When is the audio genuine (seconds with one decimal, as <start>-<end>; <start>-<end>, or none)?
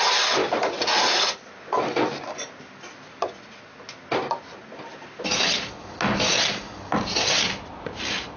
0.0-8.4